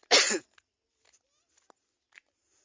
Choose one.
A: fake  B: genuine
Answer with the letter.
B